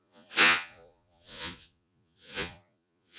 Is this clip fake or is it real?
fake